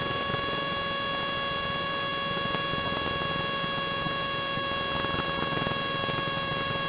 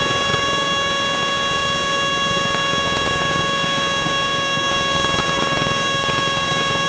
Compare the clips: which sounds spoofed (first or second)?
second